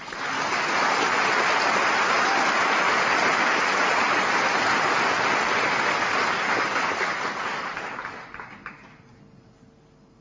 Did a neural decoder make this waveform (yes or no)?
no